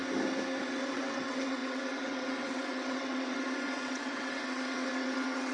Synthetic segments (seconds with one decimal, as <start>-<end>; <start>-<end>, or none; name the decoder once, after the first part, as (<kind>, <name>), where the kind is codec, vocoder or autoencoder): 0.6-5.5 (vocoder, WaveNeXt)